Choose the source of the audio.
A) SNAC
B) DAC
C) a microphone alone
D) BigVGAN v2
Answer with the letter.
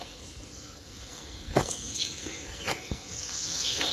A